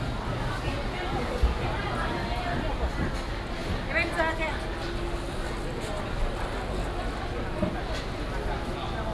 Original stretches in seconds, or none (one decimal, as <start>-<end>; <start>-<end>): 0.0-9.1

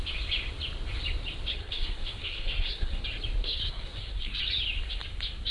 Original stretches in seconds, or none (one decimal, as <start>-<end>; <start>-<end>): 0.0-1.5; 3.0-3.4; 4.4-5.5

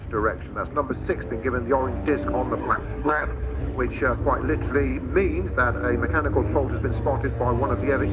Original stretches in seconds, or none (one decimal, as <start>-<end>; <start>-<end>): 0.0-2.6; 3.6-8.1

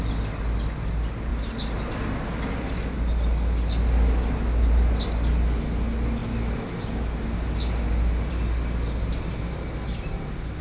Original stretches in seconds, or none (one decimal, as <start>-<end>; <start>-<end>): 0.0-10.6

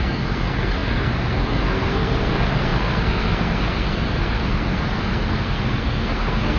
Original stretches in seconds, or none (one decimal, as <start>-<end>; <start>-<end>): none

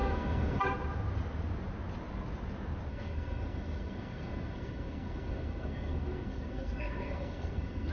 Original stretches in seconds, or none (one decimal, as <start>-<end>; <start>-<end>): 0.6-2.9

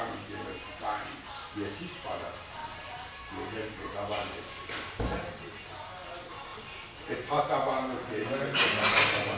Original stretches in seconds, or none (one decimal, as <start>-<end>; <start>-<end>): 0.0-9.4

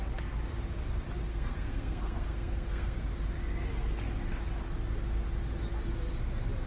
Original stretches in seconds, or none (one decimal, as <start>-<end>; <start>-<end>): 0.0-1.3; 3.1-6.7